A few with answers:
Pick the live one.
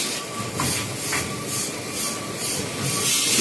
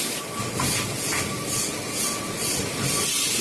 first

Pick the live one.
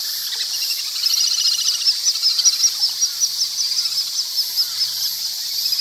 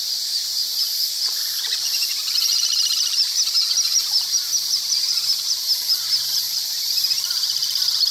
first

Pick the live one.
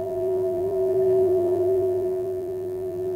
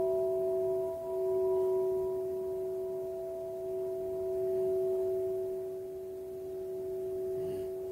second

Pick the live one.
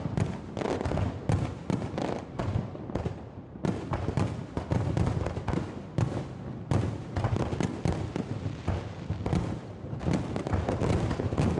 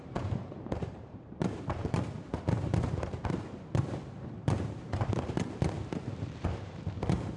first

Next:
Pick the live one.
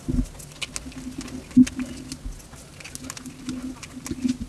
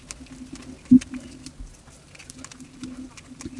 first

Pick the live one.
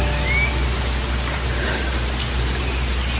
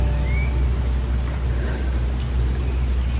first